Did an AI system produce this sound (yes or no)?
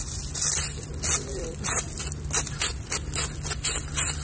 no